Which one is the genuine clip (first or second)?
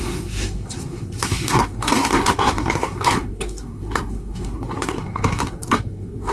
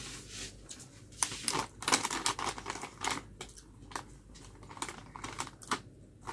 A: second